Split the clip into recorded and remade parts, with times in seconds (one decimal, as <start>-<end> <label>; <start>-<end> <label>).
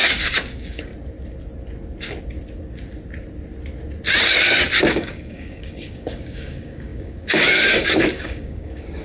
0.0-0.9 remade; 0.9-4.9 recorded; 4.9-9.0 remade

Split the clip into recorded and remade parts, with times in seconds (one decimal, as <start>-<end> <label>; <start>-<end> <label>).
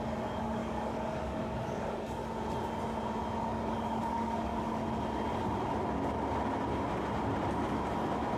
0.0-2.2 remade; 2.2-3.4 recorded; 3.4-4.8 remade; 4.8-8.4 recorded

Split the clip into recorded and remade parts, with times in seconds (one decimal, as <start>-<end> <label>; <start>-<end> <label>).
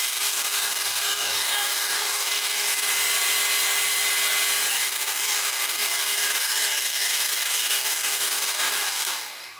0.0-2.9 remade; 2.9-4.7 recorded; 4.7-9.6 remade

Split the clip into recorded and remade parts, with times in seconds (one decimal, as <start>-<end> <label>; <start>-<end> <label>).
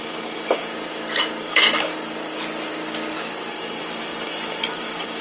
0.0-0.7 remade; 0.7-1.4 recorded; 1.4-1.9 remade; 1.9-3.5 recorded; 3.5-5.2 remade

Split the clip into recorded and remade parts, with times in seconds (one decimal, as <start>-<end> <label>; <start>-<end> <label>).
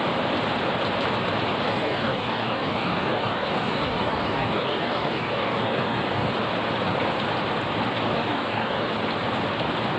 0.0-1.7 recorded; 1.7-6.3 remade; 6.3-8.1 recorded; 8.1-8.9 remade; 8.9-10.0 recorded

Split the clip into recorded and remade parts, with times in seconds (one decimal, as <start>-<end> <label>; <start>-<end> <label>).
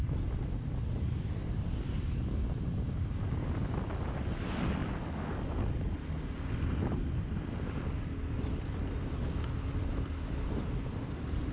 0.0-11.5 recorded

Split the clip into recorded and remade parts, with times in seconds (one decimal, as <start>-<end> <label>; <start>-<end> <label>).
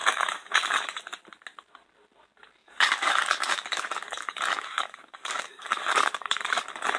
0.0-1.0 remade; 1.0-2.6 recorded; 2.6-7.0 remade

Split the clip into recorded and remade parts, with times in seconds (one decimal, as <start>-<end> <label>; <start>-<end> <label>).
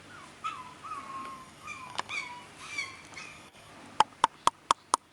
0.0-1.2 recorded; 1.2-2.1 remade; 2.1-3.2 recorded; 3.2-3.7 remade; 3.7-5.1 recorded